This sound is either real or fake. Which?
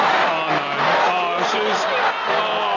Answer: real